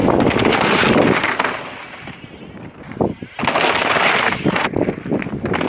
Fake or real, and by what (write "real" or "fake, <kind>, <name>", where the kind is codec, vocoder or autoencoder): real